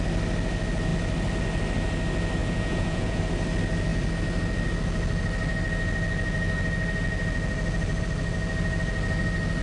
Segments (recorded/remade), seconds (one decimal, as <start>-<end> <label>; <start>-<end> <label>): 0.0-2.4 recorded; 2.4-3.2 remade; 3.2-9.6 recorded